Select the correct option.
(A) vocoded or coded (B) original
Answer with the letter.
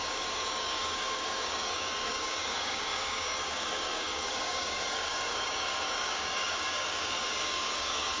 A